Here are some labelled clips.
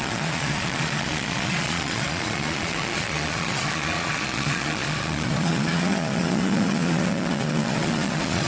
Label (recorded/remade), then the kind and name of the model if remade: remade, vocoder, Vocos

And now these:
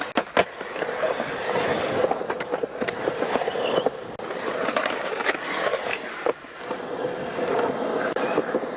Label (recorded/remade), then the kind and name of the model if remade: recorded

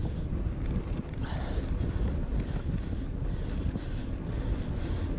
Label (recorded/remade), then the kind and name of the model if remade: recorded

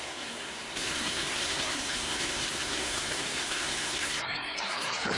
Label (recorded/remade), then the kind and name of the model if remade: remade, codec, SNAC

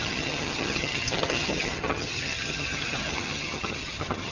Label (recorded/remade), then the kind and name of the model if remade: remade, vocoder, HiFi-GAN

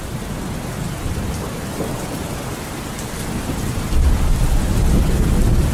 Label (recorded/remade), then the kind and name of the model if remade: recorded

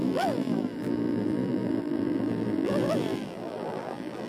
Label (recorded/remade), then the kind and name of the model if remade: remade, vocoder, BigVGAN v2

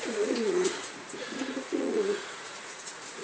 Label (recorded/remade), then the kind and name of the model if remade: remade, vocoder, Vocos